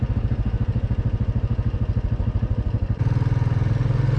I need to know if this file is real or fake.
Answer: real